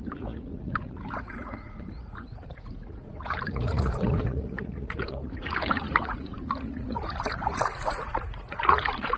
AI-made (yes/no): yes